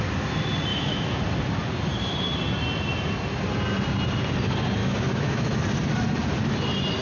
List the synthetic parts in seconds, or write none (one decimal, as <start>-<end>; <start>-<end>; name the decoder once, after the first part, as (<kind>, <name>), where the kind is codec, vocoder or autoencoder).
0.7-1.2 (autoencoder, DAC-VAE); 4.8-5.6